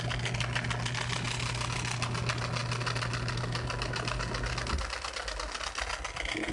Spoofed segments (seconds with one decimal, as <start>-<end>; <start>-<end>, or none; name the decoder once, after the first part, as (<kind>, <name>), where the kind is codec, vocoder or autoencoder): none